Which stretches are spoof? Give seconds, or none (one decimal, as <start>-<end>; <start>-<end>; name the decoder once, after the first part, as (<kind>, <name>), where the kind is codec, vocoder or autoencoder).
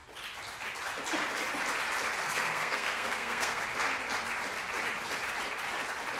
2.2-3.6 (codec, SNAC)